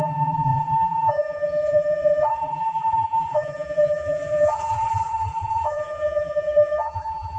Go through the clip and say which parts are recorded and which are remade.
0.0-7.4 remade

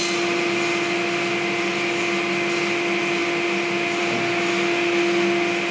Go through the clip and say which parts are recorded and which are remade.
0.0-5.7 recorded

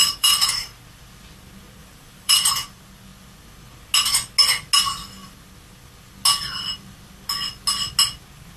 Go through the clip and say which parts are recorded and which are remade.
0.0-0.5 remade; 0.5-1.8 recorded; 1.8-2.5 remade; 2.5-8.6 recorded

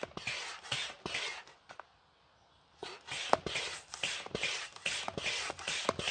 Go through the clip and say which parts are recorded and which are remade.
0.0-6.1 recorded

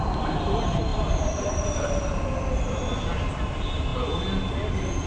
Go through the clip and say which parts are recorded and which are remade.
0.0-0.9 recorded; 0.9-2.1 remade; 2.1-5.1 recorded

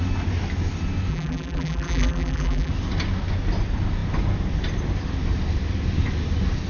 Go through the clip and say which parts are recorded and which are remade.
0.0-1.1 recorded; 1.1-2.7 remade; 2.7-6.7 recorded

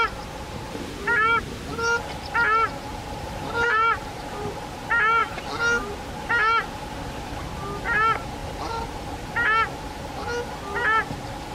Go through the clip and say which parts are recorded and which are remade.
0.0-2.9 recorded; 2.9-4.6 remade; 4.6-11.5 recorded